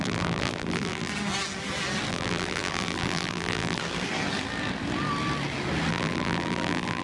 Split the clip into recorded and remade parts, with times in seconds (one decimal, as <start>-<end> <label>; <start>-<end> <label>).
0.0-1.1 remade; 1.1-2.1 recorded; 2.1-3.8 remade; 3.8-5.9 recorded; 5.9-7.0 remade